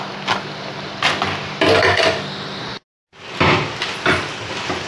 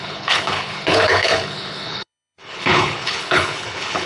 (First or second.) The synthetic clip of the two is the second